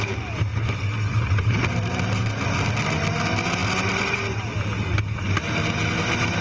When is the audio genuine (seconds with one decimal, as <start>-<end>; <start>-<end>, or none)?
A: 0.0-6.4